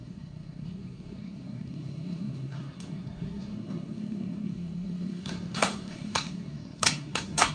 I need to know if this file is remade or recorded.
remade